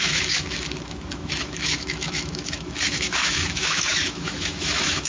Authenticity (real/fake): fake